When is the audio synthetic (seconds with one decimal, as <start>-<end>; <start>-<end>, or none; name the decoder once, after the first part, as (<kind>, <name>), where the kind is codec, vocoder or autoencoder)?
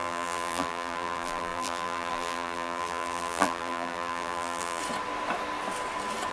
0.0-4.8 (vocoder, BigVGAN v2)